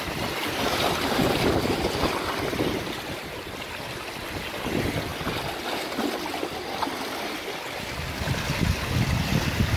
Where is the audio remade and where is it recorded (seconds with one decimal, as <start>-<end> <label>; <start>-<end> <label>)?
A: 0.0-9.8 recorded